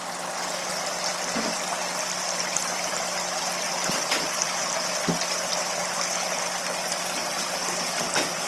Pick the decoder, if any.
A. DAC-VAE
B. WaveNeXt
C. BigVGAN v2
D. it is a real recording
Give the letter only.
D